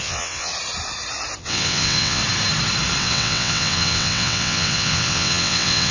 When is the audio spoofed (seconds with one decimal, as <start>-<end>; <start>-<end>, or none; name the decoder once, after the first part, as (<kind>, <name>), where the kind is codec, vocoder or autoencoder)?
0.0-0.5 (vocoder, WaveNeXt); 1.4-2.2; 3.0-5.9